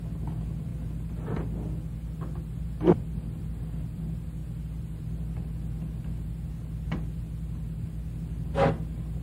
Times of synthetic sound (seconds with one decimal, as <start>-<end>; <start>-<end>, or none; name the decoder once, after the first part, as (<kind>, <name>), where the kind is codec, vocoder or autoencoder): none